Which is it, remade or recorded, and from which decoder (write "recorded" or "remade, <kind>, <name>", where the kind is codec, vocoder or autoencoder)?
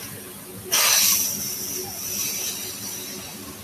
recorded